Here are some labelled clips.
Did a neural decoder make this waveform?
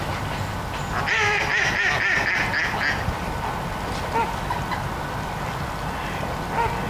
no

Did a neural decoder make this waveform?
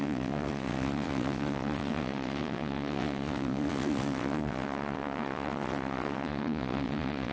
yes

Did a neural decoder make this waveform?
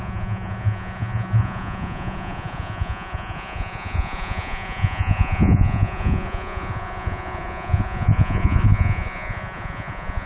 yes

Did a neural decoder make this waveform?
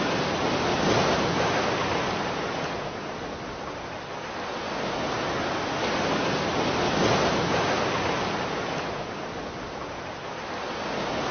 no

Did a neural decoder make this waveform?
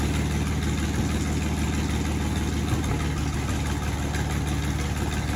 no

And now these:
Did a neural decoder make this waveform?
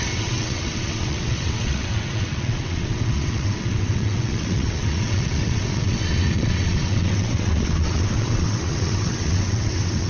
yes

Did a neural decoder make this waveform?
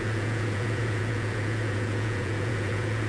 yes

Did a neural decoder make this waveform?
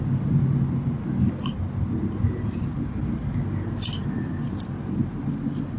no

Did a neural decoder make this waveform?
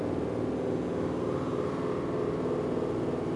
no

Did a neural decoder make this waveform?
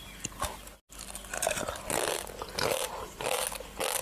no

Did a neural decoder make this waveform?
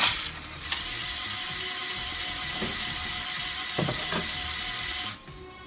no